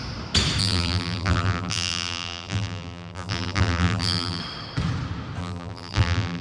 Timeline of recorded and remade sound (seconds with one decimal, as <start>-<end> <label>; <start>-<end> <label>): 0.0-0.6 recorded; 0.6-4.4 remade; 4.4-5.4 recorded; 5.4-6.4 remade